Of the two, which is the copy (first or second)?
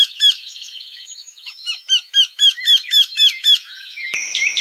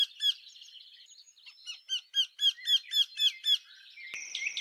first